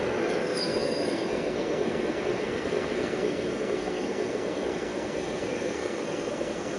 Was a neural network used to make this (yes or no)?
yes